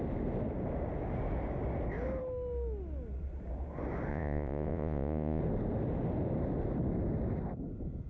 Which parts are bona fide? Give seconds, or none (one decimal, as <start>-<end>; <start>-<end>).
0.0-4.1; 5.4-8.1